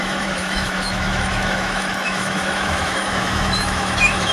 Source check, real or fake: fake